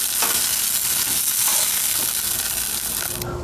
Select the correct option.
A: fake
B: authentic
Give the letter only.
B